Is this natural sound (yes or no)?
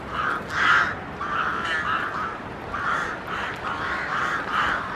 yes